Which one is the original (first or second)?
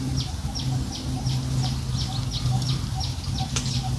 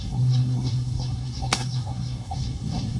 first